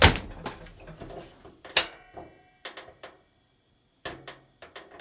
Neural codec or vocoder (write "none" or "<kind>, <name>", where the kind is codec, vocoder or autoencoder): none